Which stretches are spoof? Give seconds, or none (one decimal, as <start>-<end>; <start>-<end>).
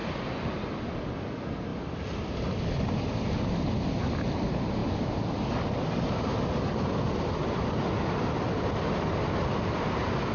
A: none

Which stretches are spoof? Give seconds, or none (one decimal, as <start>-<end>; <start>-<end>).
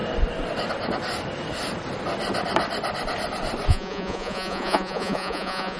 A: 3.7-5.8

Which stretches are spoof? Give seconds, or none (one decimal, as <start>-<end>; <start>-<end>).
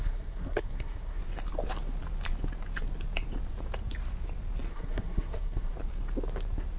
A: 0.0-1.2; 4.7-5.7